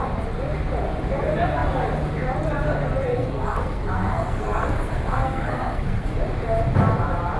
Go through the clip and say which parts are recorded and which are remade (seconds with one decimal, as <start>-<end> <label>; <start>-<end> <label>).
0.0-3.1 recorded; 3.1-6.2 remade; 6.2-7.4 recorded